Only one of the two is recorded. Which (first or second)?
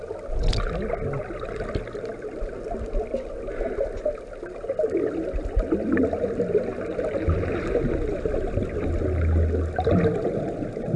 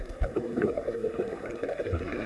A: first